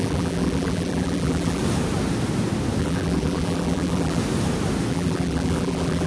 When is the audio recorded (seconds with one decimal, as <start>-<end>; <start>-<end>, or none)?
1.6-2.8; 4.2-4.9